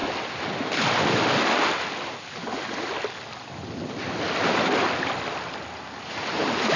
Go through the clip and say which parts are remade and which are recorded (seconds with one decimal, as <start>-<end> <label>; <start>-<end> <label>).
0.0-6.8 recorded